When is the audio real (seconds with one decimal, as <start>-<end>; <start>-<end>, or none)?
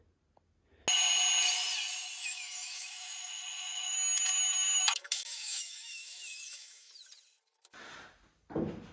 0.0-2.2; 6.9-8.9